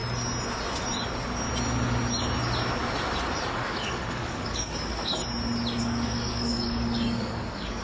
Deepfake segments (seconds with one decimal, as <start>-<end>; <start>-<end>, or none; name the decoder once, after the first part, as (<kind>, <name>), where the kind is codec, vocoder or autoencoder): 3.5-5.2 (codec, DAC); 5.8-7.8